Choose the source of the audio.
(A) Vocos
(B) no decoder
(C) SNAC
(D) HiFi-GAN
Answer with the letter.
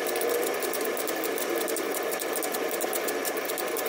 B